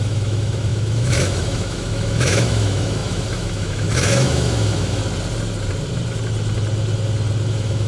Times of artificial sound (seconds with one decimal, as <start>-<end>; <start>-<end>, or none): 0.0-5.0; 7.5-7.9

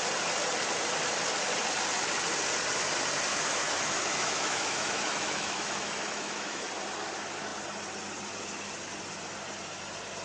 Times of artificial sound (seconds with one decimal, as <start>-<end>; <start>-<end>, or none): 3.3-6.7